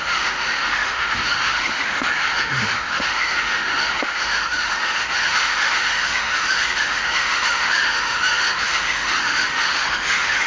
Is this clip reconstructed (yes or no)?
yes